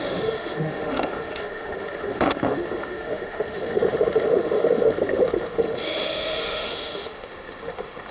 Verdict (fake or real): fake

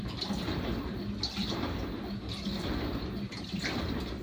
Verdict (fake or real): real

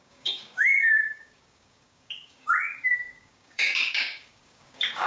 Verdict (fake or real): fake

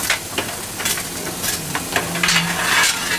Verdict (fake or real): fake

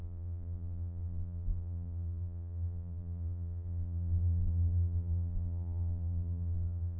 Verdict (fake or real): fake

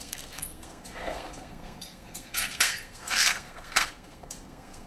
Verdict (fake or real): fake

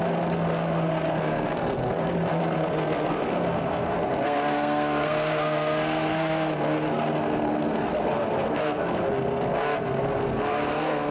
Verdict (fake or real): fake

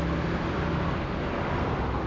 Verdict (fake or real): real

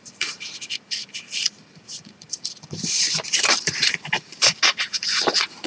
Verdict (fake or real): fake